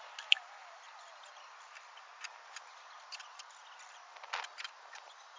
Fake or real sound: real